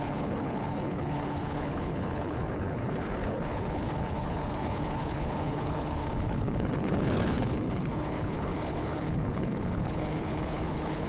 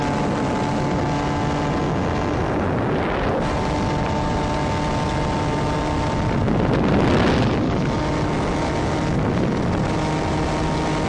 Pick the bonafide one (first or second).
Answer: second